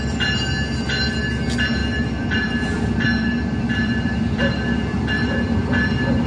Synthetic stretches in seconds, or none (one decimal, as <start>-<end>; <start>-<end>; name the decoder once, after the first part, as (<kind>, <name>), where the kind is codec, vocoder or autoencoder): 1.8-5.6 (vocoder, BigVGAN v2)